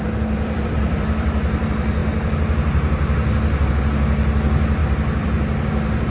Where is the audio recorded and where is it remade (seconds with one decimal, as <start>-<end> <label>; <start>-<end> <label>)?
0.0-2.0 remade; 2.0-3.7 recorded; 3.7-6.1 remade